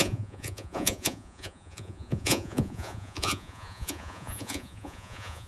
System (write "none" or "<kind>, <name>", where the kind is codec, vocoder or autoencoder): vocoder, Vocos